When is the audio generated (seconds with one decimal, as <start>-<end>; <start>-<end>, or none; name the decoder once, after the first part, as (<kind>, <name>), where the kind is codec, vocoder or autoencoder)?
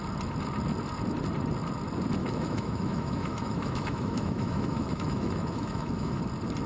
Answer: 2.2-6.2 (autoencoder, DAC-VAE)